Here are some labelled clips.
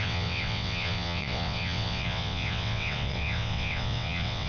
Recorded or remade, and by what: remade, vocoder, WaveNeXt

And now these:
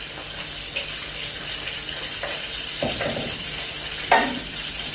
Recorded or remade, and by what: recorded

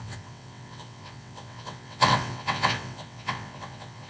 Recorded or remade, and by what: remade, vocoder, WaveNeXt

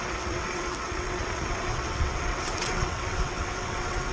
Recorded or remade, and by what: remade, vocoder, WaveNeXt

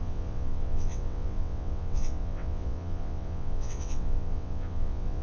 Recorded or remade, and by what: remade, vocoder, WaveNeXt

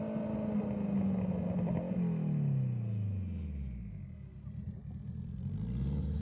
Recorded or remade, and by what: recorded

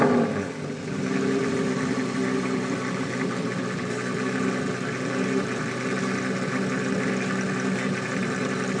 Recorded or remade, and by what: recorded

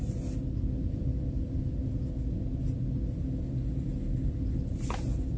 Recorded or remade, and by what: recorded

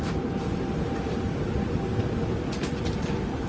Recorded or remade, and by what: recorded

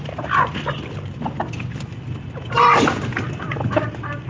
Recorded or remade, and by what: recorded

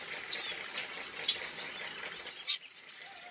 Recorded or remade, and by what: recorded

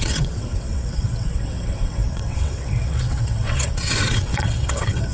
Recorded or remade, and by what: remade, vocoder, WaveNeXt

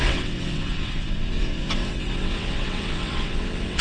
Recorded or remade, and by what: remade, vocoder, WaveNeXt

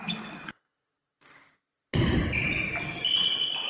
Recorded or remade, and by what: recorded